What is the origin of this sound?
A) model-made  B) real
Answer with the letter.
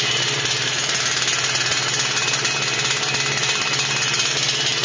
B